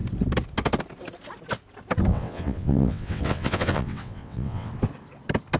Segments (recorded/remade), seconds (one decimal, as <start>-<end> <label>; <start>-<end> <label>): 0.0-2.1 recorded; 2.1-4.7 remade; 4.7-5.6 recorded